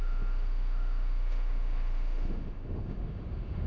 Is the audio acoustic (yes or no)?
no